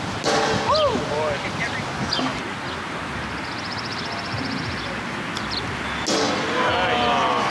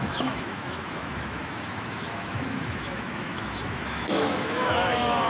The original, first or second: first